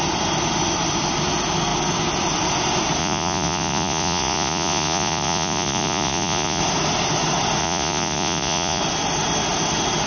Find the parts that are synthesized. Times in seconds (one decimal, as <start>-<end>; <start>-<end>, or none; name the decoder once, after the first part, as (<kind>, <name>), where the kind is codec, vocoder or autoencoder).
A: 3.0-6.6 (vocoder, Vocos); 7.6-8.8